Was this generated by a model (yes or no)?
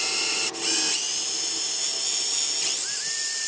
no